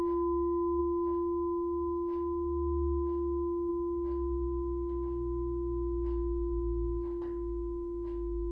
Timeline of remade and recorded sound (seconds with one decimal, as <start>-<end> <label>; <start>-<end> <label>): 0.0-8.5 recorded